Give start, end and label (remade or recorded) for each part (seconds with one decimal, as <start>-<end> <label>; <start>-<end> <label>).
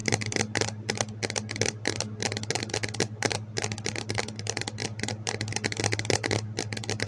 0.0-7.1 recorded